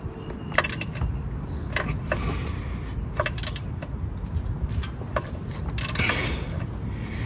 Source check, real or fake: real